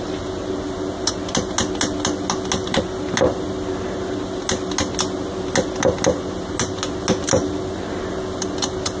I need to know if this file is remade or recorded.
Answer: recorded